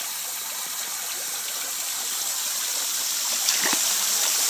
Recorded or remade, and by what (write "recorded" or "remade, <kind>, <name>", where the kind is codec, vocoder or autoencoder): remade, vocoder, BigVGAN v2